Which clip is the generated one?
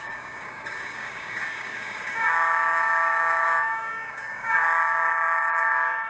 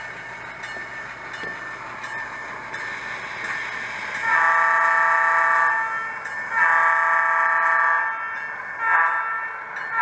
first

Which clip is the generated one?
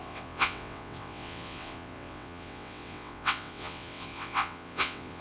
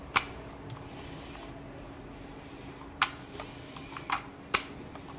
first